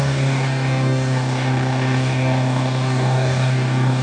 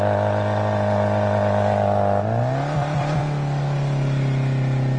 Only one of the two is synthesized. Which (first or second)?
first